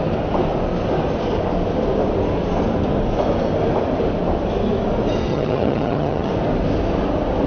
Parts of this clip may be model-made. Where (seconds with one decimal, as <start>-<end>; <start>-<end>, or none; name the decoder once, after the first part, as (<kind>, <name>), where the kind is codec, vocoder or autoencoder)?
5.3-6.3 (vocoder, HiFi-GAN)